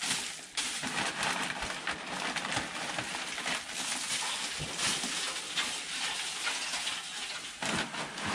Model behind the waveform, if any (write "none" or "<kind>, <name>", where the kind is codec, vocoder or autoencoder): none